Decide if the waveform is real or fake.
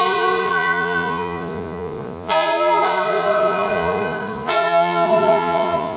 fake